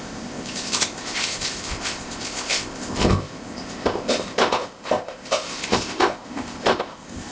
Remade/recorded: remade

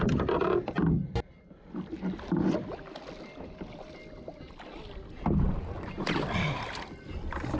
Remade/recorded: recorded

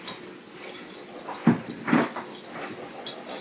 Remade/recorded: recorded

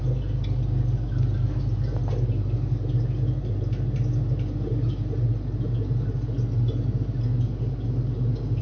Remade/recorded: recorded